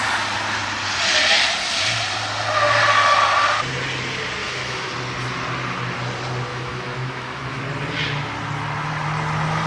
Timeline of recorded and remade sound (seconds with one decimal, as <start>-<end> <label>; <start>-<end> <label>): 0.0-4.4 recorded; 4.4-4.9 remade; 4.9-6.5 recorded; 6.5-7.6 remade; 7.6-9.7 recorded